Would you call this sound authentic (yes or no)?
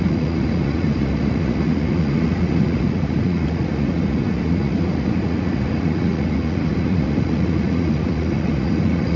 no